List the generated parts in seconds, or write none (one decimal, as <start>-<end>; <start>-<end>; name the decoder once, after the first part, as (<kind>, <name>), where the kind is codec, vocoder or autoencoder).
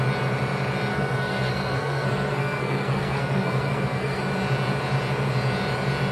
0.9-4.2 (codec, SNAC)